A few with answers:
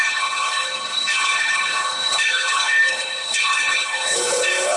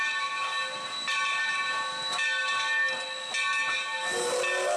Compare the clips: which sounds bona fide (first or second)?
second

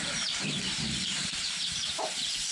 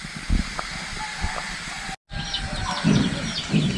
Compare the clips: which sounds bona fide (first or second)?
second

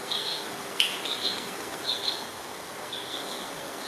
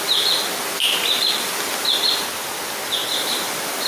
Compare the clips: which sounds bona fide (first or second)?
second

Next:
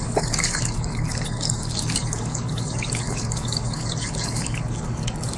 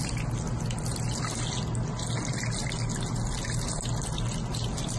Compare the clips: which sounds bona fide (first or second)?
second